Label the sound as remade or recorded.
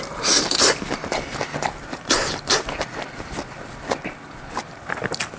remade